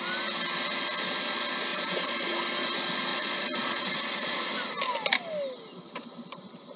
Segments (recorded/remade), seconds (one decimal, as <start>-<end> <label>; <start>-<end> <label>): 0.0-1.7 recorded; 1.7-2.4 remade; 2.4-3.1 recorded; 3.1-4.5 remade; 4.5-6.8 recorded